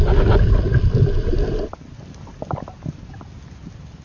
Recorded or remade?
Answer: recorded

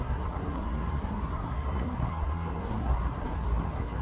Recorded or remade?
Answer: remade